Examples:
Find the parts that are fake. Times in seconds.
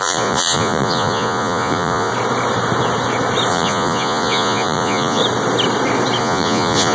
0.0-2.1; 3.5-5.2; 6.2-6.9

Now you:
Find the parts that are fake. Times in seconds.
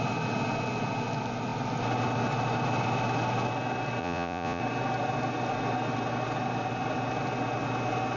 4.0-4.6